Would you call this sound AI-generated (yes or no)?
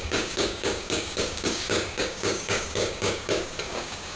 yes